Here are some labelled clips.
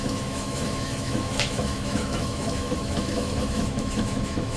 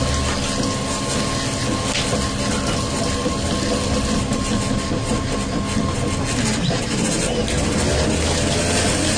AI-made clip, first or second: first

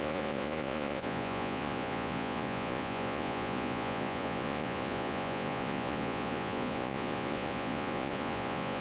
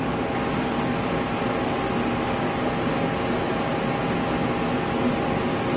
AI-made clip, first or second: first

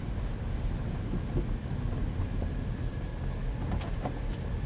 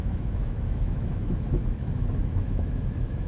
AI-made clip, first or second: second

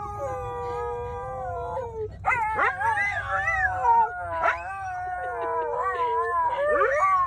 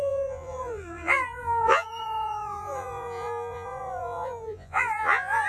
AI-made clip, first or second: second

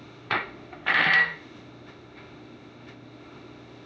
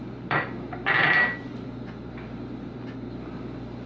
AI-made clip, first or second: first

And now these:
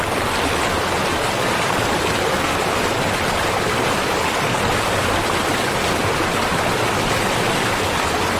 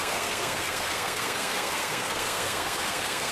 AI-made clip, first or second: second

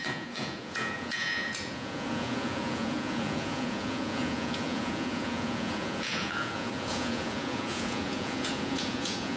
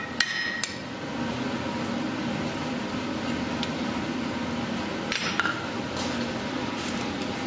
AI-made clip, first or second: first